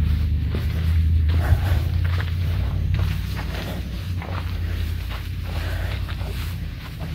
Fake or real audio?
fake